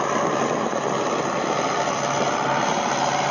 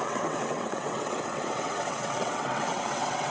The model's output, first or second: second